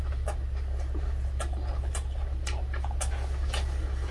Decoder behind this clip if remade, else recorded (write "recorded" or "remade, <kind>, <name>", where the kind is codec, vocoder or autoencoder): recorded